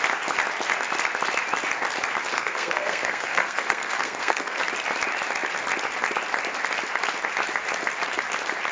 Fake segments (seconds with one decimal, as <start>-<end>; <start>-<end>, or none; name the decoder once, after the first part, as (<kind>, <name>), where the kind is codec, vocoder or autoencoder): 2.3-4.6 (codec, SNAC)